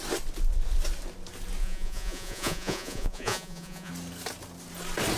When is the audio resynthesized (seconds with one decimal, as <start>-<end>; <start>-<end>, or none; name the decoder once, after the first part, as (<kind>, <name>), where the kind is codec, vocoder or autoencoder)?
1.6-3.9 (vocoder, Vocos)